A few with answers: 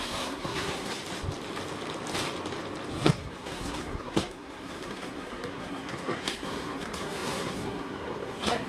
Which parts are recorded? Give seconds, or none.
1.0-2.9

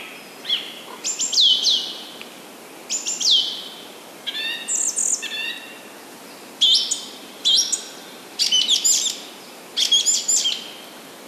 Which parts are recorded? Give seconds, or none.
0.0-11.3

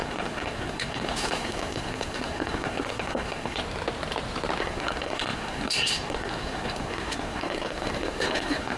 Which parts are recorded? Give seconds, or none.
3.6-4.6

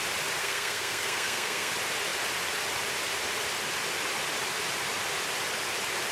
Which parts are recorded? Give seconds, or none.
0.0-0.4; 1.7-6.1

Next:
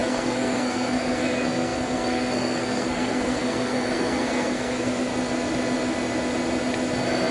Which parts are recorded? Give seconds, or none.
5.1-7.3

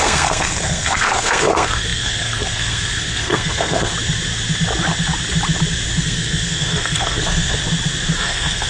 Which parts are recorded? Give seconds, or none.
3.9-6.0; 7.6-8.2